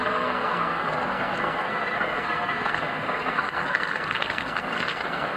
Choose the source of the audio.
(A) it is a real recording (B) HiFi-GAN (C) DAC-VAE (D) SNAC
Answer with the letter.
D